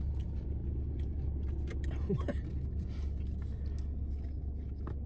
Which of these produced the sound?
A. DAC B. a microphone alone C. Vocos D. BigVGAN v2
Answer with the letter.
B